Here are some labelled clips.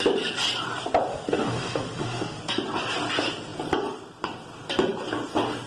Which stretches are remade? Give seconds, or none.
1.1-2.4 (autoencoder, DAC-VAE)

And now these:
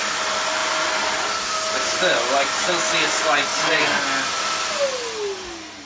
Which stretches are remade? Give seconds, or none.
none

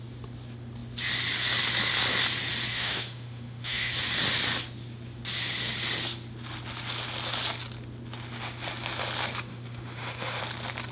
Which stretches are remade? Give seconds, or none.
2.7-3.9 (autoencoder, DAC-VAE); 9.5-10.4

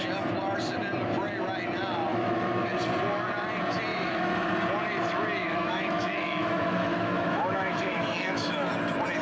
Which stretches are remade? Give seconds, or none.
2.1-2.7 (autoencoder, DAC-VAE); 3.9-4.5; 5.4-8.7

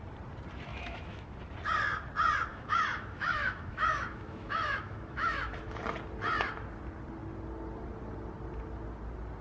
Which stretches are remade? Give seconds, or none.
0.7-1.3 (autoencoder, DAC-VAE); 2.5-5.8

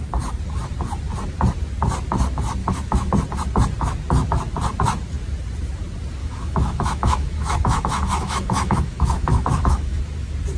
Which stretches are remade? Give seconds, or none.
2.6-3.1 (autoencoder, DAC-VAE); 6.2-10.0